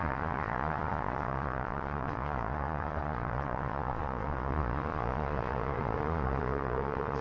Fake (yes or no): yes